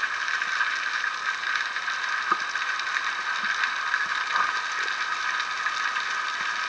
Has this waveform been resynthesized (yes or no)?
no